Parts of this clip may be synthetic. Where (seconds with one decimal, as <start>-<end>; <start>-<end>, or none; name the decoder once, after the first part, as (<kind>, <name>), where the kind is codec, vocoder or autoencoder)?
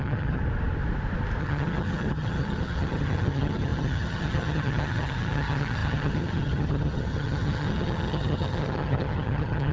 0.0-0.4 (vocoder, HiFi-GAN); 1.4-9.7